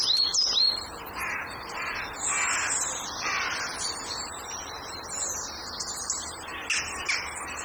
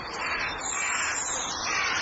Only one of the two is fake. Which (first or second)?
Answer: second